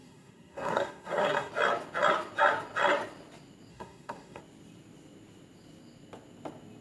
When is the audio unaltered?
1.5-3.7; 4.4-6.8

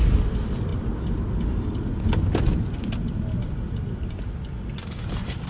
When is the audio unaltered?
0.0-5.5